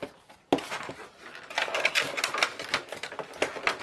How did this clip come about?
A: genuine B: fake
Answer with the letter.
A